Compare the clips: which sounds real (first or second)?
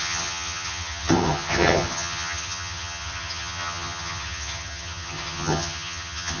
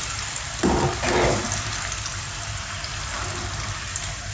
second